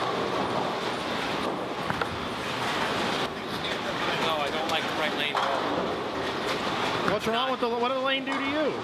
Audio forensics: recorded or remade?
recorded